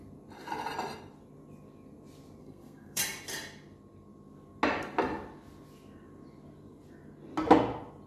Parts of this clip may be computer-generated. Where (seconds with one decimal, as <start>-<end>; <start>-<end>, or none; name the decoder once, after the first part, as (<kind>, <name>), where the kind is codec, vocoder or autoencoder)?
2.4-3.0 (codec, SNAC)